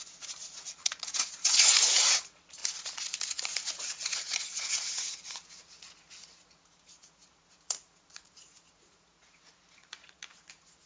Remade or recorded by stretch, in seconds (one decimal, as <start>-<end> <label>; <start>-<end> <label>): 0.0-2.6 remade; 2.6-3.1 recorded; 3.1-10.9 remade